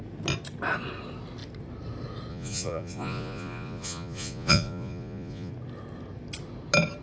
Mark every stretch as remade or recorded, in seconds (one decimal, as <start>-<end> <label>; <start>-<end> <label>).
0.0-2.3 recorded; 2.3-5.5 remade; 5.5-7.0 recorded